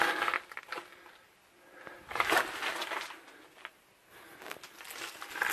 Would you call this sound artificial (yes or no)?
no